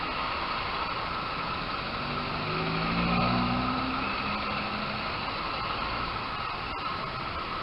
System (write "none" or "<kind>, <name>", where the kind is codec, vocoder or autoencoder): none